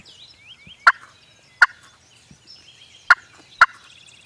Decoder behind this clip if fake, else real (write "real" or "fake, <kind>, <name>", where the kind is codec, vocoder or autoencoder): real